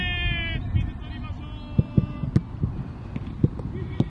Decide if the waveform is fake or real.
real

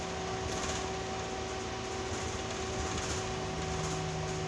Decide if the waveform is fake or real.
real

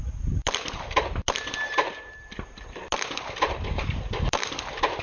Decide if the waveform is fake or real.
real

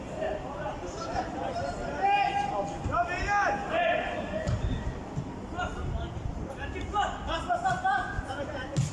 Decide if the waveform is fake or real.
real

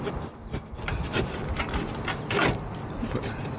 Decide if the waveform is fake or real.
real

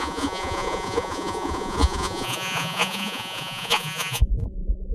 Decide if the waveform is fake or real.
fake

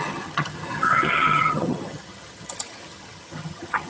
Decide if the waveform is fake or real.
fake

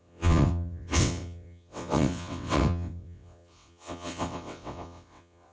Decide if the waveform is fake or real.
fake